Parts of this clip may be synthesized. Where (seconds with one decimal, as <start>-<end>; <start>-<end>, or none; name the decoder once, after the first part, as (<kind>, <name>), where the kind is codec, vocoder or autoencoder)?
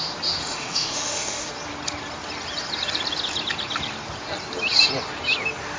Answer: 0.4-1.5 (autoencoder, DAC-VAE)